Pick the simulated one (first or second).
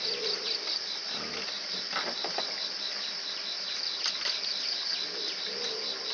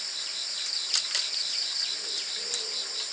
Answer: first